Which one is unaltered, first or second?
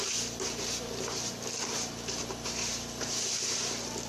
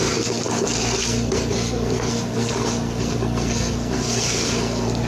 first